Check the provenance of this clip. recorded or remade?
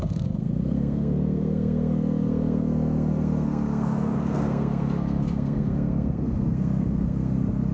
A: remade